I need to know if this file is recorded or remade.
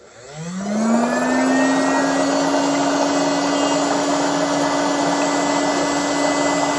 recorded